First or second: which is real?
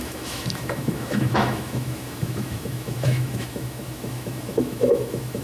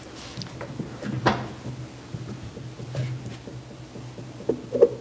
second